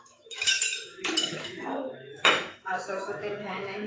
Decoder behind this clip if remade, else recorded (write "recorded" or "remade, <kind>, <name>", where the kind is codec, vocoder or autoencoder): remade, autoencoder, DAC-VAE